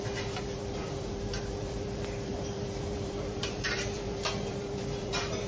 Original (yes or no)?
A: no